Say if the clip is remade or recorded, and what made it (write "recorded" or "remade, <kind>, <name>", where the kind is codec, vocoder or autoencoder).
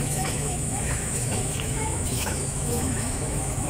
remade, autoencoder, DAC-VAE